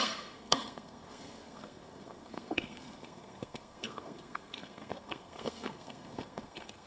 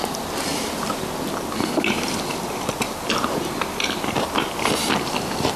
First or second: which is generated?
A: first